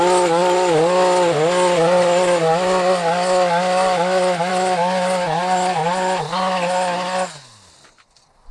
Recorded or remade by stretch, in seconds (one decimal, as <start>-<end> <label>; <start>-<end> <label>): 0.0-8.5 recorded